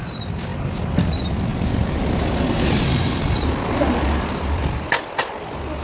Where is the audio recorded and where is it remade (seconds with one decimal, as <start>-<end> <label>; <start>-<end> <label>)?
0.0-1.5 recorded; 1.5-5.0 remade; 5.0-5.8 recorded

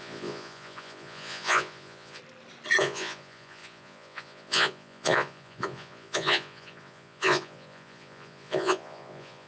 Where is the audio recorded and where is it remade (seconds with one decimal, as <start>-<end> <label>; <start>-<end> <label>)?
0.0-2.2 remade; 2.2-2.8 recorded; 2.8-9.5 remade

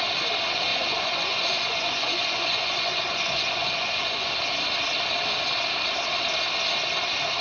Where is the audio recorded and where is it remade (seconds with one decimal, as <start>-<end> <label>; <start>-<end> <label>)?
0.0-0.7 recorded; 0.7-4.3 remade; 4.3-7.4 recorded

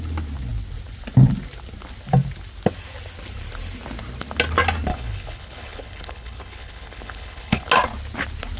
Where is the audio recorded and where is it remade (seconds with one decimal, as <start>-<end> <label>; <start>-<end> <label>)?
0.0-4.9 recorded; 4.9-7.7 remade; 7.7-8.6 recorded

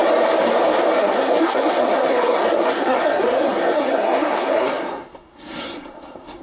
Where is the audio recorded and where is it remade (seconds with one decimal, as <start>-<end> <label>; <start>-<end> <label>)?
0.0-1.0 recorded; 1.0-6.4 remade